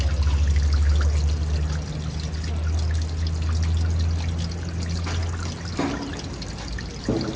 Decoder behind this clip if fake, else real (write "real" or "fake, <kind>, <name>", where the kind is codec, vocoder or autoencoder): real